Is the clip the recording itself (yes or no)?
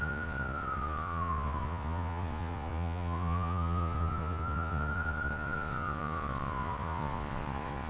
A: no